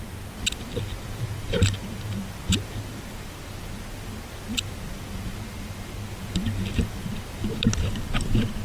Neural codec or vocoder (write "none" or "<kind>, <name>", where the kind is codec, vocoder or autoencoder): none